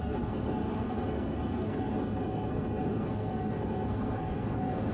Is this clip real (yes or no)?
no